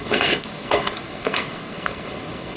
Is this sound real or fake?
fake